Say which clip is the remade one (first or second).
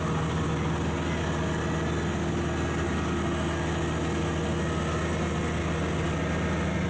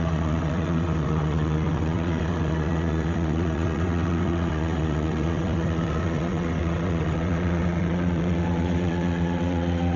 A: second